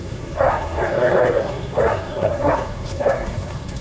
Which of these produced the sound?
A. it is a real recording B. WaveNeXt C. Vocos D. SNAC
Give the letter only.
D